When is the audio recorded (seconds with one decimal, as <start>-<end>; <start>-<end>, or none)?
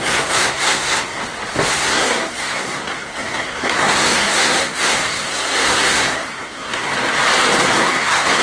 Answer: 1.2-1.7; 6.9-7.8